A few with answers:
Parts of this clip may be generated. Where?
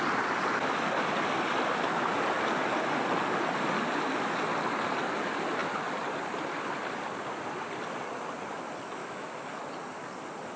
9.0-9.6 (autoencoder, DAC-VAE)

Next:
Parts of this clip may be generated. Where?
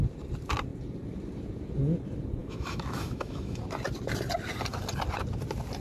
2.4-3.6 (autoencoder, DAC-VAE)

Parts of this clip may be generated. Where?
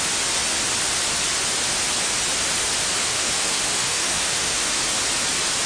3.0-4.8 (autoencoder, DAC-VAE)